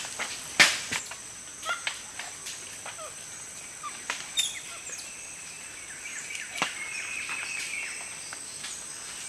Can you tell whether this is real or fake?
real